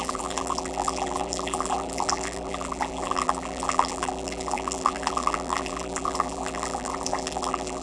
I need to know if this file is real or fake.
fake